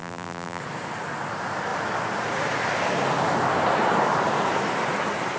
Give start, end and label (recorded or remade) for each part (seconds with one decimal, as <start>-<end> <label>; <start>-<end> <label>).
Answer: 0.0-0.6 remade; 0.6-5.4 recorded